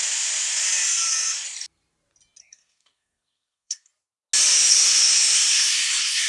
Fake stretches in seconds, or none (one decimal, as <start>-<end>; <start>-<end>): 2.4-3.9; 4.7-6.3

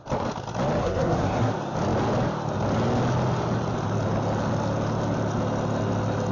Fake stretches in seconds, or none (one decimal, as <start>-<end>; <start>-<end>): 0.8-1.5

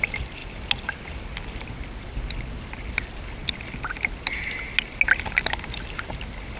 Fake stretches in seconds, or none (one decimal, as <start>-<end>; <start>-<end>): none

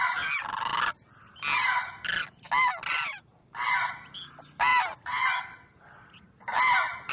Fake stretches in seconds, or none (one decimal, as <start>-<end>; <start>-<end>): none

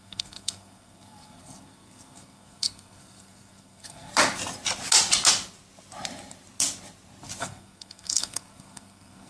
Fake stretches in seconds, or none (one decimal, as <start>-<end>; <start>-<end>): 0.0-4.1; 7.4-9.3

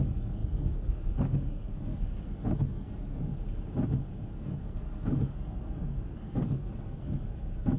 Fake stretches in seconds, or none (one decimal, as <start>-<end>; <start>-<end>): 0.0-3.3; 4.3-7.8

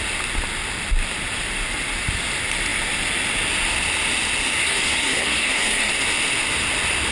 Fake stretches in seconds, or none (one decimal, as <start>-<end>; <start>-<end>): 4.6-5.9